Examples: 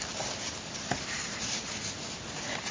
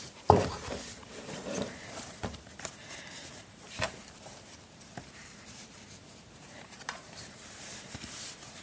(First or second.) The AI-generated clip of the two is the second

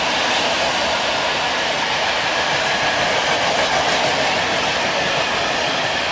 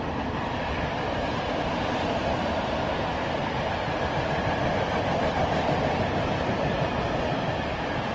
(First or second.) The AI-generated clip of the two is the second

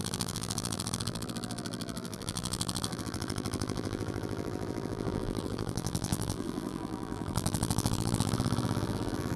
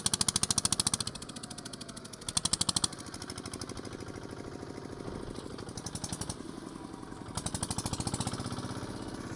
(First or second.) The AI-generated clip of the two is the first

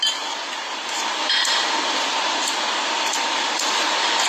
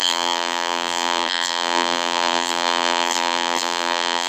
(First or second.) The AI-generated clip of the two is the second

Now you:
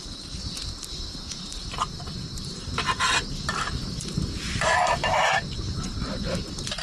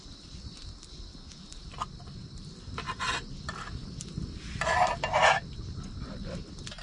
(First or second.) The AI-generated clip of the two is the first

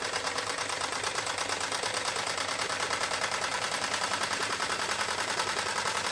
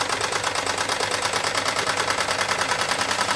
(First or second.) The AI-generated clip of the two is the first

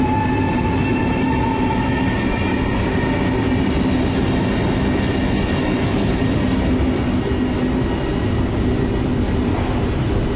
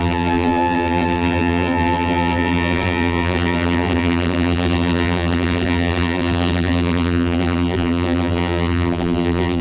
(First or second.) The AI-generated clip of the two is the second